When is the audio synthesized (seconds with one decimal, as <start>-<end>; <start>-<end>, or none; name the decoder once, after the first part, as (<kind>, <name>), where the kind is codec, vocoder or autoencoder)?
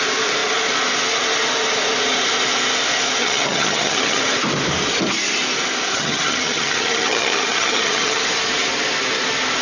3.2-4.2 (vocoder, HiFi-GAN); 5.9-8.2